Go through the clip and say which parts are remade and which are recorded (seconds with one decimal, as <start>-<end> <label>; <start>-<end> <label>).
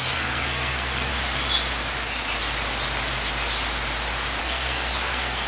0.0-1.1 remade; 1.1-4.4 recorded; 4.4-5.5 remade